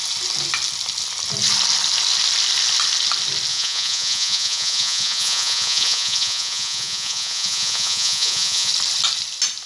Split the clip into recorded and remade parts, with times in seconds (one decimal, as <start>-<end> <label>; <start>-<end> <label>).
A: 0.0-3.5 recorded; 3.5-8.7 remade; 8.7-9.7 recorded